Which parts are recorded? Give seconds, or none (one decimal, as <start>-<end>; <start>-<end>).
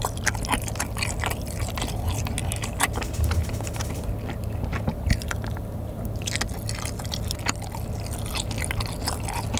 0.0-9.6